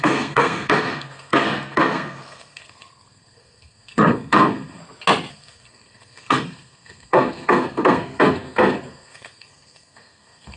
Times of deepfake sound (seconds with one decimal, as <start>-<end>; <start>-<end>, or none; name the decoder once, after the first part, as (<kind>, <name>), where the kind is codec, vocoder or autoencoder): 0.0-4.8 (codec, SNAC); 5.3-10.6